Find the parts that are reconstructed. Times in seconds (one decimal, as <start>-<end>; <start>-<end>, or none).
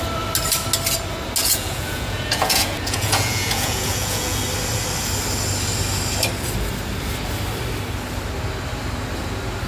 1.4-4.4